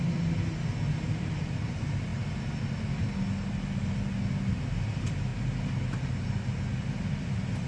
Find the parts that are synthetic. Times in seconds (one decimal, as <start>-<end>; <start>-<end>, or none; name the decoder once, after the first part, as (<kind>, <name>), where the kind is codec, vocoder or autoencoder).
none